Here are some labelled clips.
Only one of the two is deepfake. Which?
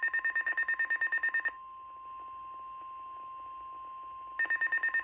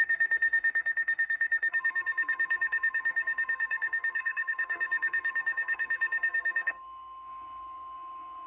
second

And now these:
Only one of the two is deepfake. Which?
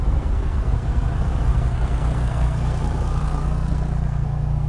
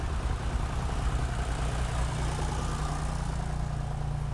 first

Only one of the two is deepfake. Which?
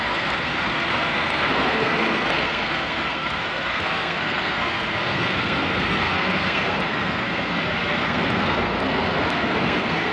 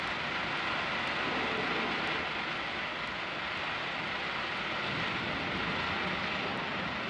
first